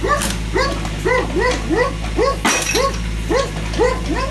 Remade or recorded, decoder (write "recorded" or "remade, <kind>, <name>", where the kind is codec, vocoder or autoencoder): recorded